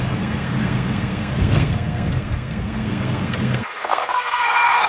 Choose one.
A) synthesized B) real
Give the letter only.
A